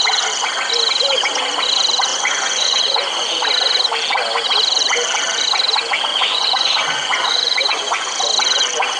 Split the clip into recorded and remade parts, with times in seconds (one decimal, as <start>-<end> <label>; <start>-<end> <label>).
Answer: 0.0-2.1 recorded; 2.1-3.3 remade; 3.3-6.1 recorded; 6.1-8.1 remade; 8.1-9.0 recorded